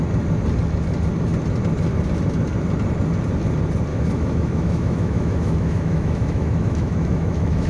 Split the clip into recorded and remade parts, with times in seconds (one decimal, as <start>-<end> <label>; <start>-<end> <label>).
0.0-3.9 recorded; 3.9-7.7 remade

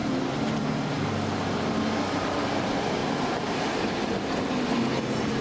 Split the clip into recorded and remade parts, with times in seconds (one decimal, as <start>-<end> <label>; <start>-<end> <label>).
0.0-5.4 recorded

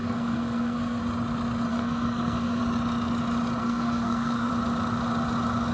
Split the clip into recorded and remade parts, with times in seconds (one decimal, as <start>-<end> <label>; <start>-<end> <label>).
0.0-1.0 remade; 1.0-1.7 recorded; 1.7-2.6 remade; 2.6-3.6 recorded; 3.6-4.5 remade; 4.5-5.7 recorded